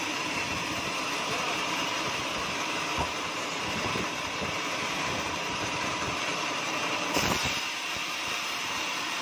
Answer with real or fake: fake